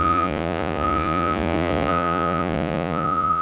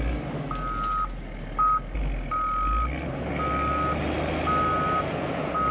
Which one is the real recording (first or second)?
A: second